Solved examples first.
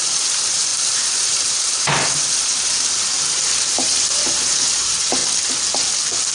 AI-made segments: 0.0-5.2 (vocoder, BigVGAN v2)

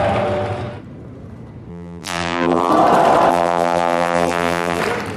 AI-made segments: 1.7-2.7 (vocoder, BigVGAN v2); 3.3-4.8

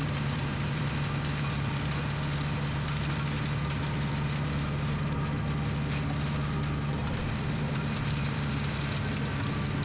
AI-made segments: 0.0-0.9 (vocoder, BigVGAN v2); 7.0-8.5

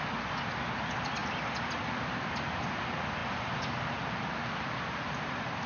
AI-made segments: 1.2-1.7 (vocoder, BigVGAN v2)

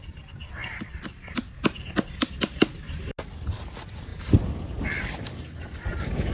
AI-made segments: 0.6-1.3 (vocoder, BigVGAN v2); 4.1-5.0

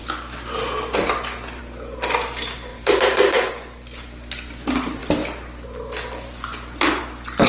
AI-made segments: 2.7-3.5 (vocoder, BigVGAN v2)